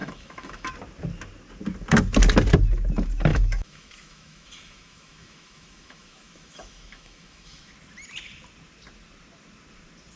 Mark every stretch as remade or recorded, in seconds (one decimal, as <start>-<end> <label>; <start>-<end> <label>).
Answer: 0.0-0.7 remade; 0.7-3.3 recorded; 3.3-7.7 remade; 7.7-10.2 recorded